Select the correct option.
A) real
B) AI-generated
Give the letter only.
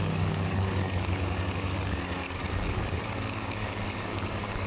B